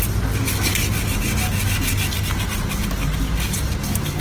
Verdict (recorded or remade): recorded